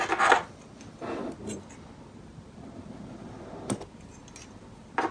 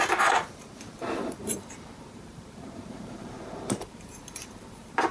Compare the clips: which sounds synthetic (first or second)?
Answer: second